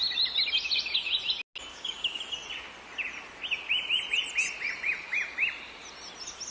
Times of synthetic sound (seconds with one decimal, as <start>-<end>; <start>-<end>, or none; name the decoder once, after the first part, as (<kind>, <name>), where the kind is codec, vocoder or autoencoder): 1.7-2.2 (codec, DAC)